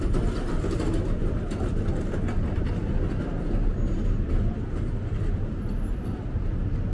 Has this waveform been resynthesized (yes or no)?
no